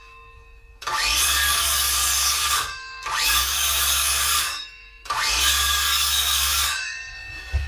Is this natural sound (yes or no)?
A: no